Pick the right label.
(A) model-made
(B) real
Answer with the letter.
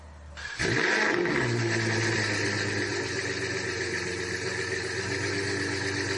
B